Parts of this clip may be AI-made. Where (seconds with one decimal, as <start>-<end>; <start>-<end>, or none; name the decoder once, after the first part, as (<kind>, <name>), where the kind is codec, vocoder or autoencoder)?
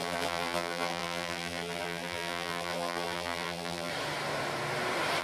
0.0-3.9 (vocoder, BigVGAN v2)